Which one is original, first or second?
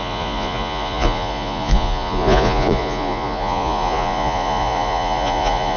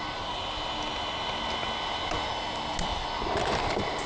second